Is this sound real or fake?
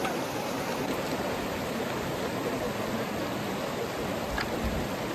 real